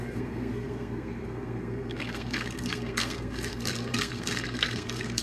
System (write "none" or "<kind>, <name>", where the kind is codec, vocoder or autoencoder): codec, SNAC